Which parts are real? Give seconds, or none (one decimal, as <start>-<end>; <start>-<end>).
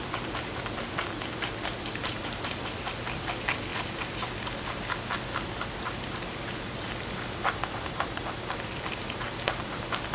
0.0-10.1